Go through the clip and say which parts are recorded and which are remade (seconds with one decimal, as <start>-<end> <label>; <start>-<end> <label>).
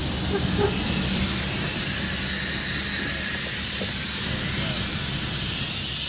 0.0-6.1 recorded